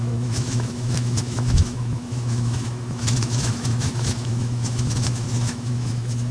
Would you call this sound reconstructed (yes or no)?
yes